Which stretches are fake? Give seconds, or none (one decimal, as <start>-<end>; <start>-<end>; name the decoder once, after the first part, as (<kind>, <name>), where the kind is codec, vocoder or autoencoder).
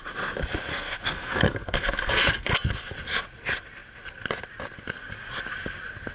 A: 0.7-2.5 (codec, SNAC)